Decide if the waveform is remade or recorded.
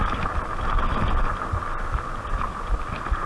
recorded